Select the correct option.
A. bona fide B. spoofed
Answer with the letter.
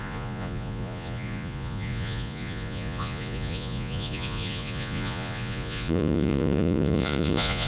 B